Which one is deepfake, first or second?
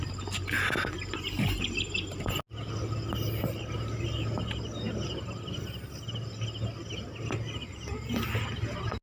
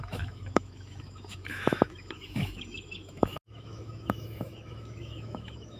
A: second